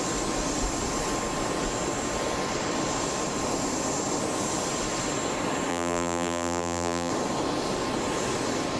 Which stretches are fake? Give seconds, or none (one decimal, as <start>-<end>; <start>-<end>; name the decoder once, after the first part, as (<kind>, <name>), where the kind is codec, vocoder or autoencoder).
5.7-7.1 (vocoder, BigVGAN v2)